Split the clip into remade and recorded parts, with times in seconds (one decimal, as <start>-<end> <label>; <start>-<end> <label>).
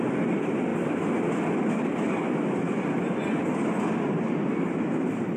0.0-5.4 recorded